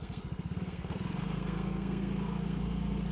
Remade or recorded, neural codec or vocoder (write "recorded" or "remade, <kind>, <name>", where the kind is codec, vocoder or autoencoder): remade, codec, SNAC